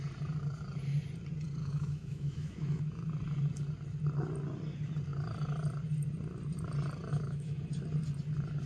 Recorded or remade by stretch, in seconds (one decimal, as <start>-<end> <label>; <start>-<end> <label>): 0.0-1.6 recorded; 1.6-2.8 remade; 2.8-7.1 recorded; 7.1-7.6 remade; 7.6-8.7 recorded